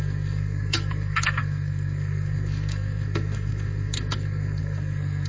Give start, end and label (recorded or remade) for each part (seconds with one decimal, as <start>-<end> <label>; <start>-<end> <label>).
0.0-5.3 remade